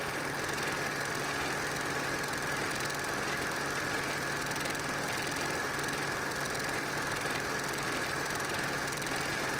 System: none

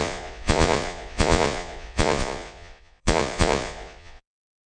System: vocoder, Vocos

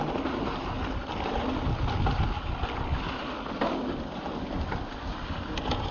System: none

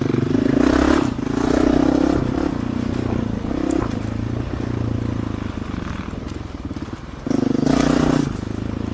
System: none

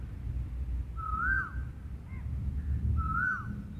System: none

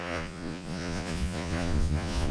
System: vocoder, Vocos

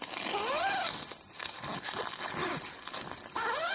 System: none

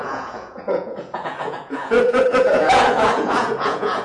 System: vocoder, Vocos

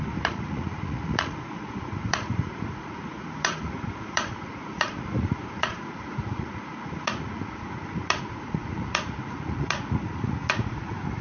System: vocoder, Vocos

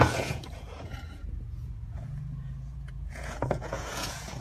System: vocoder, Vocos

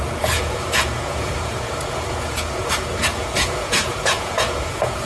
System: vocoder, Vocos